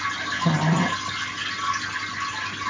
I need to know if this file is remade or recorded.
recorded